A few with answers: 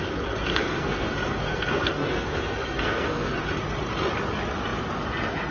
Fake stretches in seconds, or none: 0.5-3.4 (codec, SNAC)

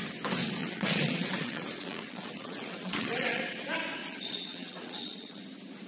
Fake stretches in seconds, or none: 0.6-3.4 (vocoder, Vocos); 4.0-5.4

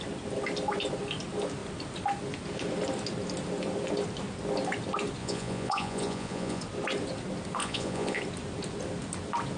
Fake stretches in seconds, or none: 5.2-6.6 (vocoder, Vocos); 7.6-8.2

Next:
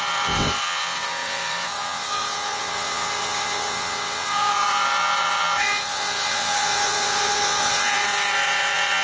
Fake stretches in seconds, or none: 0.0-9.0 (vocoder, WaveNeXt)

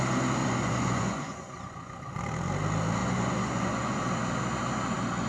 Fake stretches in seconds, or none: 0.4-2.2 (vocoder, Vocos); 3.0-4.0

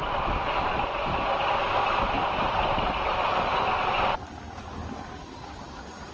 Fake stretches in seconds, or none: none